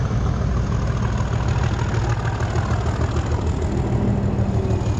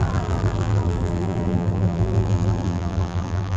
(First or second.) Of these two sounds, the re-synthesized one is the second